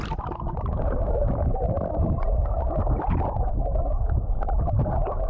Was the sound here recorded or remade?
recorded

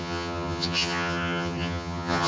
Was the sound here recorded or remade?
remade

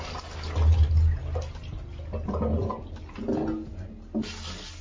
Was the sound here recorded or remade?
recorded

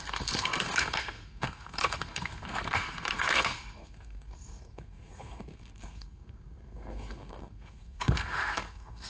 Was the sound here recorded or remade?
remade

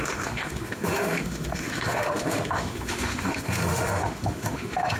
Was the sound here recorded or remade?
remade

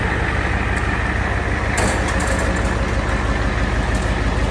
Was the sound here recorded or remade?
recorded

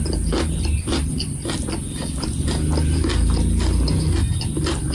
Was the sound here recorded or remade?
recorded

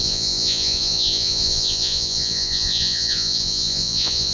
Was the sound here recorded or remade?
remade